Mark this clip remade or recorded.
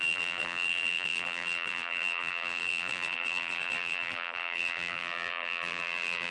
remade